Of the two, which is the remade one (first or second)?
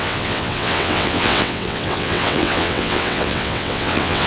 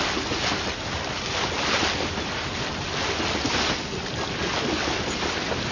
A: first